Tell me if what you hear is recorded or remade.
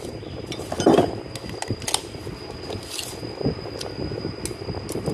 recorded